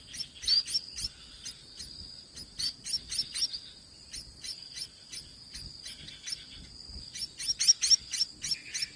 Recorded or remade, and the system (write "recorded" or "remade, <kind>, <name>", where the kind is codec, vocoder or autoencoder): recorded